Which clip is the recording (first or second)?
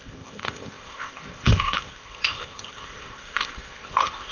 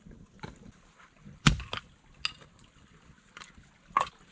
second